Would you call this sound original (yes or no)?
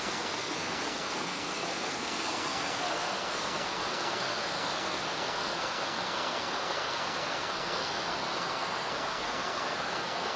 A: no